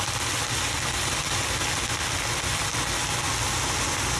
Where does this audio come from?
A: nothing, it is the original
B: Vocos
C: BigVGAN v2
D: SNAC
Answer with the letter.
A